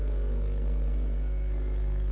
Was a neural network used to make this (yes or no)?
yes